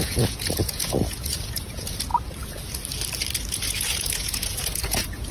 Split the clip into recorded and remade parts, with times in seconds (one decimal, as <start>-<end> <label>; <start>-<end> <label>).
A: 0.0-2.1 remade; 2.1-3.5 recorded; 3.5-5.3 remade